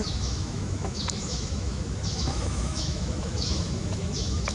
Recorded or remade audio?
remade